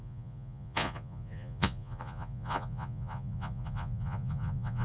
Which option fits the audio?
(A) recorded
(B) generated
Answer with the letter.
B